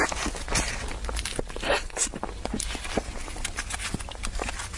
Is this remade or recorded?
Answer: recorded